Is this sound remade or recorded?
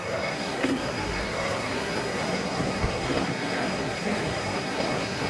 remade